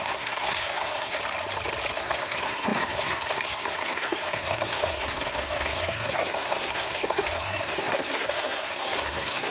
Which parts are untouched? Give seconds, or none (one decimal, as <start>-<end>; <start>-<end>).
1.2-2.0

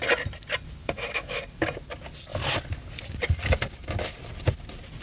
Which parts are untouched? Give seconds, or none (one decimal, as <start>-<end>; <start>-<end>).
0.0-0.8; 1.4-5.0

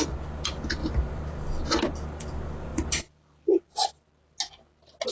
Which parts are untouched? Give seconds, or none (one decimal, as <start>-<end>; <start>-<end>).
0.0-0.8; 1.6-5.1

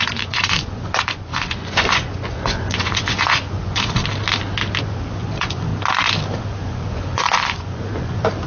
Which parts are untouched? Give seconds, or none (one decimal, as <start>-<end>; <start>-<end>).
4.0-4.8; 5.7-6.4